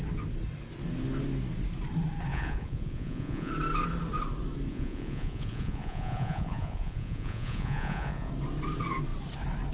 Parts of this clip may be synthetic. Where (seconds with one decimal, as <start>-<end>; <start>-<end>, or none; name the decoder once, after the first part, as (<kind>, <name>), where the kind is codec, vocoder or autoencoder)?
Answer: 2.3-3.5 (vocoder, Vocos); 4.7-8.3